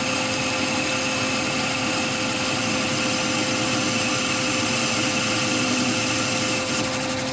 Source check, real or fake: real